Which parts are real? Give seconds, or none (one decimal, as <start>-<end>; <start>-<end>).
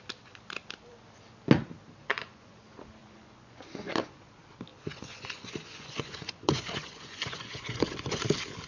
0.0-2.0; 2.6-3.0; 4.3-4.7; 8.2-8.7